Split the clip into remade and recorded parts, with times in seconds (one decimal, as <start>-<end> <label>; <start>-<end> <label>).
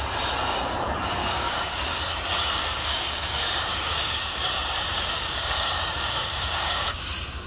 0.0-1.2 recorded; 1.2-2.0 remade; 2.0-2.4 recorded; 2.4-4.5 remade; 4.5-4.9 recorded; 4.9-7.0 remade; 7.0-7.5 recorded